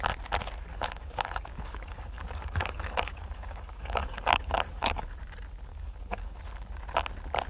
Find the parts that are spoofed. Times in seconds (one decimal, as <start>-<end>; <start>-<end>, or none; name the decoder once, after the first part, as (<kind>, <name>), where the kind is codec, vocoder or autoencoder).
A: 0.7-5.2 (codec, DAC); 5.7-6.4